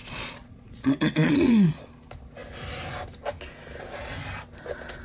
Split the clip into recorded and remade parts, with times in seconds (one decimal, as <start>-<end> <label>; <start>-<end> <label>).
0.0-1.9 remade; 1.9-5.0 recorded

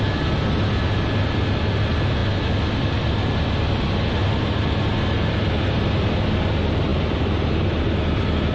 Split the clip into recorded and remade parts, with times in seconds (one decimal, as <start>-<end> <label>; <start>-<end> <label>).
0.0-8.5 recorded

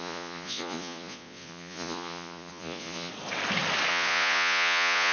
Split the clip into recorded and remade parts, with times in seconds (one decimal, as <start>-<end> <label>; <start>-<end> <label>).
0.0-3.1 remade; 3.1-3.9 recorded; 3.9-5.1 remade

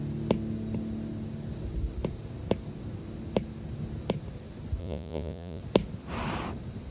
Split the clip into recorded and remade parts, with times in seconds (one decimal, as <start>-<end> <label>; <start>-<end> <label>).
0.0-4.8 recorded; 4.8-5.6 remade; 5.6-6.9 recorded

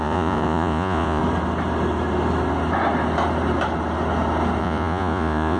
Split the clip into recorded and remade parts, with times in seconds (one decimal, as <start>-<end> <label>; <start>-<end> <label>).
0.0-1.2 remade; 1.2-4.6 recorded; 4.6-5.6 remade

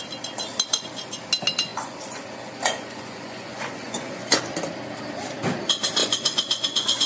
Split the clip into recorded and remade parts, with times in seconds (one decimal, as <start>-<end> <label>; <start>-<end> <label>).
0.0-0.7 recorded; 0.7-1.2 remade; 1.2-1.7 recorded; 1.7-4.4 remade; 4.4-6.0 recorded; 6.0-7.1 remade

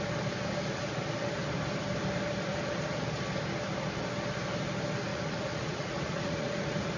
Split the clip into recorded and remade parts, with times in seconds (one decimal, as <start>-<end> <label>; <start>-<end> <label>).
0.0-5.1 recorded; 5.1-7.0 remade

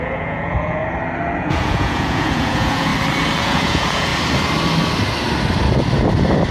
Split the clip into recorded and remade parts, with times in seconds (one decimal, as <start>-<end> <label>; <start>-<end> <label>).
0.0-0.8 remade; 0.8-1.4 recorded; 1.4-2.9 remade; 2.9-3.4 recorded; 3.4-4.1 remade; 4.1-6.5 recorded